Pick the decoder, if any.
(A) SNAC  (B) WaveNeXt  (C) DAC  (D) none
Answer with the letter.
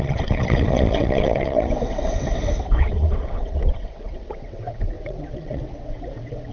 B